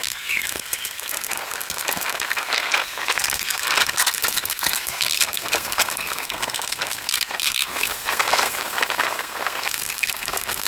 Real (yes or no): no